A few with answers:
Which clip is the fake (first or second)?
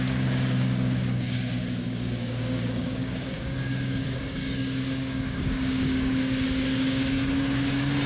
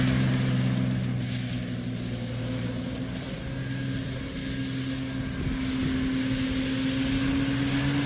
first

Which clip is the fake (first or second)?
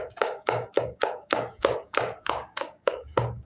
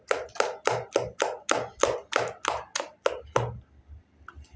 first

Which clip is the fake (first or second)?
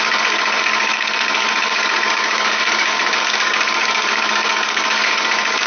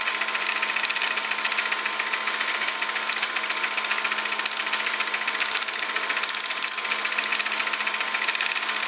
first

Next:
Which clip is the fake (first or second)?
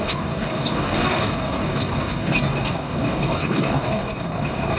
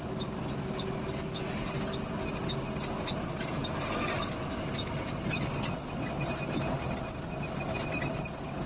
first